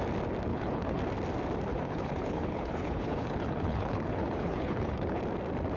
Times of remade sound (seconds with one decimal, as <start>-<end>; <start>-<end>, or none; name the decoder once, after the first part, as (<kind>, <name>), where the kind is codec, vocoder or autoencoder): 0.5-1.0 (codec, HILCodec); 1.7-5.2